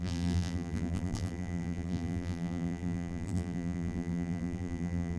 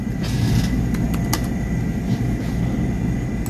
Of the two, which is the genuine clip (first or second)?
second